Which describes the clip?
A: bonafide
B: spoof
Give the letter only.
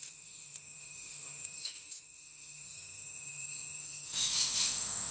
B